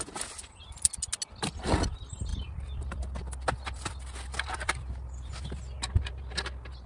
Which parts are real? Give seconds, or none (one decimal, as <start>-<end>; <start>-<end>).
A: 0.0-2.3; 5.3-6.9